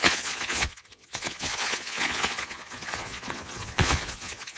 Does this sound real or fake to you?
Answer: fake